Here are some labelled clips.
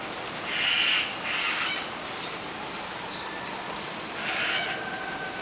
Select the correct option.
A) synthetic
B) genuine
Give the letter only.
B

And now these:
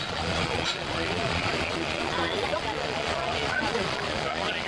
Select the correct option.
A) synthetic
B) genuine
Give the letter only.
A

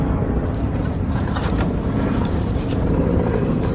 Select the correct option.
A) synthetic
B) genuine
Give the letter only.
A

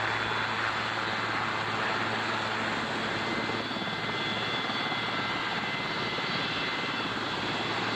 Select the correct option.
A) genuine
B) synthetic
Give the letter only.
A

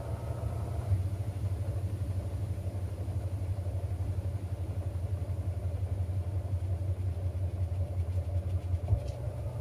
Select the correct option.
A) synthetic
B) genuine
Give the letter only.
B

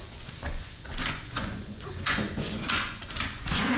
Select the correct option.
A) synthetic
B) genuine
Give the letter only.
A